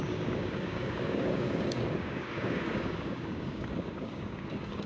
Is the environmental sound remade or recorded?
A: remade